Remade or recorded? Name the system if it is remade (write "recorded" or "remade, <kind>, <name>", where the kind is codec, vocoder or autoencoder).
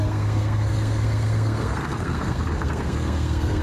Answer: remade, codec, SNAC